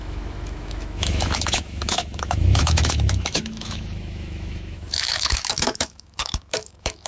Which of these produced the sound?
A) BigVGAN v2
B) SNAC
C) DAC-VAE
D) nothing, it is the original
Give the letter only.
C